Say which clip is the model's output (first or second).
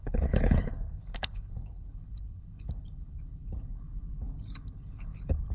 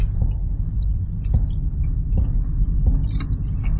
first